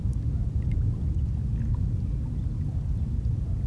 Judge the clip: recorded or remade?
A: recorded